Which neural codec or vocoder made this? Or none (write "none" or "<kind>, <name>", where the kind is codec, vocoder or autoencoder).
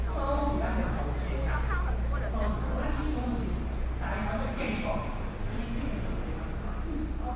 none